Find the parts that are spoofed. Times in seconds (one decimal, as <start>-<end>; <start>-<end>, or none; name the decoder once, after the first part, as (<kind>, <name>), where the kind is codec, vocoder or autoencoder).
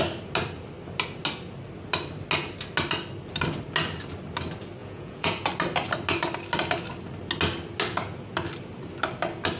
4.8-5.5 (vocoder, Vocos)